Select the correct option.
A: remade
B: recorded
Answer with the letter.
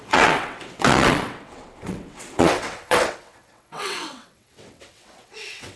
A